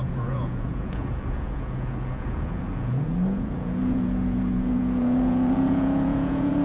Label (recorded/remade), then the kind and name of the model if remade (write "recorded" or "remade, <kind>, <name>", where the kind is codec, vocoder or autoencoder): remade, vocoder, Vocos